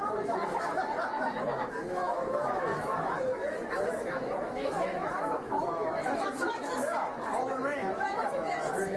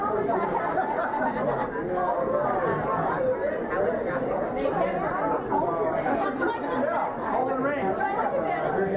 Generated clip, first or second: first